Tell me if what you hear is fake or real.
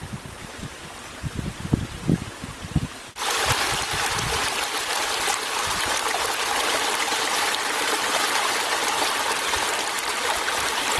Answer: real